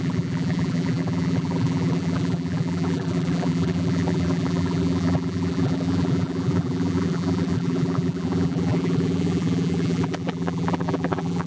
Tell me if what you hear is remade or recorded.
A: remade